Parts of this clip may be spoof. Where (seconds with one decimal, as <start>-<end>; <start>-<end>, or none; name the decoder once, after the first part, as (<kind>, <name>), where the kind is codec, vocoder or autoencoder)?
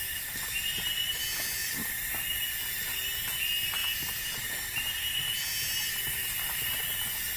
none